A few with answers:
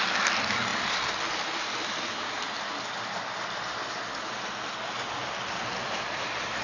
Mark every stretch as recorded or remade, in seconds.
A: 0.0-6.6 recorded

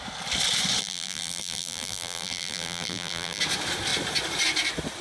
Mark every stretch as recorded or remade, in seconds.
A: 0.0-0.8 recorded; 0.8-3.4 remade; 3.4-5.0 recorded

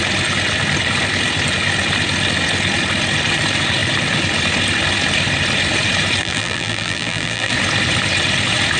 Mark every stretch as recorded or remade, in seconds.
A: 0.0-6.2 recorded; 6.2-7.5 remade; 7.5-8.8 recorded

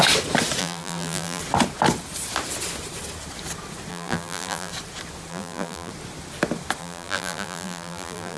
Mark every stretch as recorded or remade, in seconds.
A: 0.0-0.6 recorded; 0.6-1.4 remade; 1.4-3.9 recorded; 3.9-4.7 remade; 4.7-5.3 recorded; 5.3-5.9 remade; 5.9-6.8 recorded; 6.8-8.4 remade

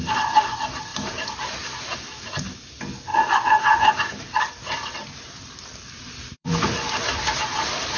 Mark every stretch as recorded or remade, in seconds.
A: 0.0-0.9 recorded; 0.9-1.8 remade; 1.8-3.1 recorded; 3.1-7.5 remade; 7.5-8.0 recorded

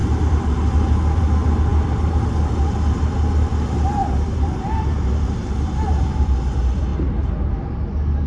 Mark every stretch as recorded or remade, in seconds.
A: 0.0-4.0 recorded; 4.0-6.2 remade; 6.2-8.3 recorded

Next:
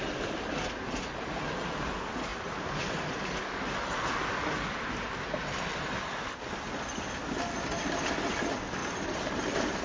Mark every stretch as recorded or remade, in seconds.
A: 0.0-2.3 recorded; 2.3-3.3 remade; 3.3-8.8 recorded; 8.8-9.8 remade

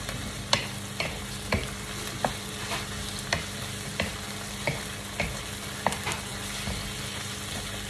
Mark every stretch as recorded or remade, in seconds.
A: 0.0-7.9 recorded